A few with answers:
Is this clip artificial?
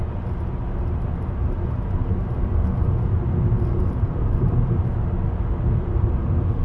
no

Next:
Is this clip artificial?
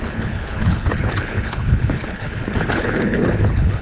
yes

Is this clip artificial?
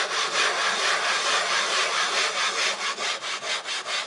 no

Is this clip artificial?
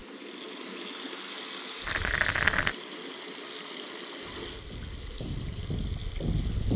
no